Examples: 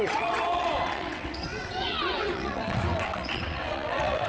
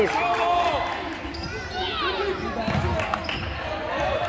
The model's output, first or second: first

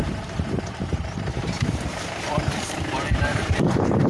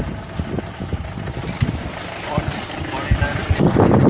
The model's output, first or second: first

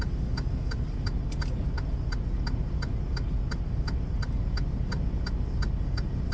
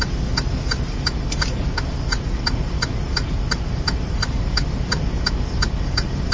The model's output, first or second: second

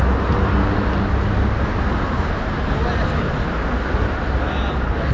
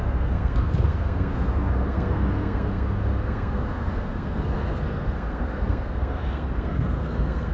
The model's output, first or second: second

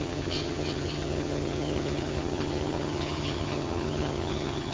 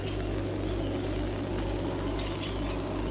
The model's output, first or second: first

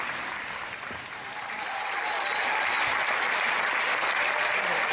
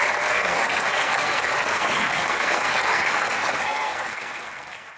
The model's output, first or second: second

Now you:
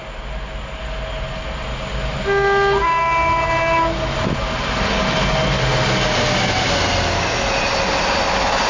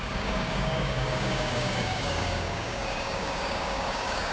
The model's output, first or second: second